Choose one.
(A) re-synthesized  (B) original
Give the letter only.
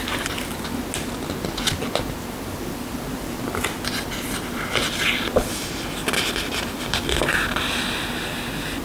B